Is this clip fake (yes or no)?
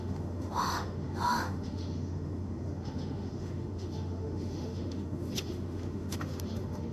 yes